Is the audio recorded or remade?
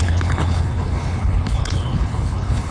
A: remade